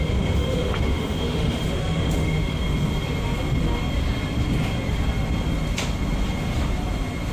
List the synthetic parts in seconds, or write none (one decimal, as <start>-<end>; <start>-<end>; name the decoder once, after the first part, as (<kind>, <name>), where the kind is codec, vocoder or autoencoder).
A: 0.0-2.6 (autoencoder, DAC-VAE)